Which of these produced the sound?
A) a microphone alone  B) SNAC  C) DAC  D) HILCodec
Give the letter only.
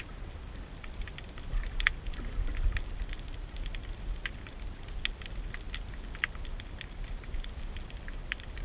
A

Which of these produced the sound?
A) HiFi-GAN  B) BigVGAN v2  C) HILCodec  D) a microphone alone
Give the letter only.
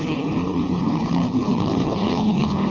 C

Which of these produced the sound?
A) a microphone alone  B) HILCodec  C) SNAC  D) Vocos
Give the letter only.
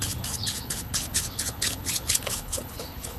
B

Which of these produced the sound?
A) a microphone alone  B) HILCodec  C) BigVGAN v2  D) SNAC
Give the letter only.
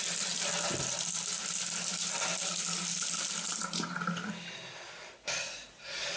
A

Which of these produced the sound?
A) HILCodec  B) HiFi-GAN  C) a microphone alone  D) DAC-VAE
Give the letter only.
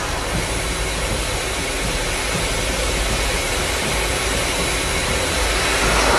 C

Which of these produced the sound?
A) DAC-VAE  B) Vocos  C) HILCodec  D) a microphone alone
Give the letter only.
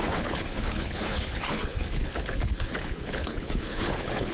C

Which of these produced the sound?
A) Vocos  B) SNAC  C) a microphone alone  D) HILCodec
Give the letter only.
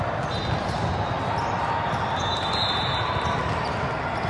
C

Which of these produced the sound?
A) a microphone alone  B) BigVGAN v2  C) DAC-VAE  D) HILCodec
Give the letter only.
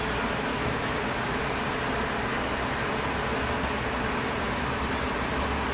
A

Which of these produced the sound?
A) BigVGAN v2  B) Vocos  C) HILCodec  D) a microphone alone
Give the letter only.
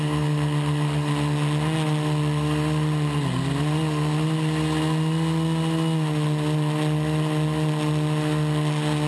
D